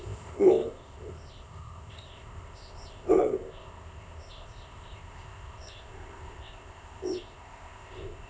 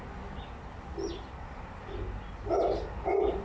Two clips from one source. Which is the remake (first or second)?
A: first